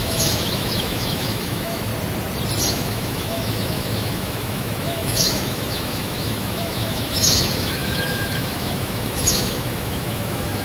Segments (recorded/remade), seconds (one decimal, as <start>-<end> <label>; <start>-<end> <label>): 0.0-1.9 remade; 1.9-2.7 recorded; 2.7-10.6 remade